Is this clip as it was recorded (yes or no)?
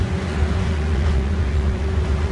no